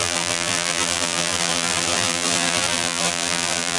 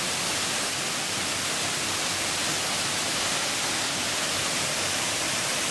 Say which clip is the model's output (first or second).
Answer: first